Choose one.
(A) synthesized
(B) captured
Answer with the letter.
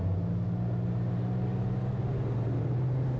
B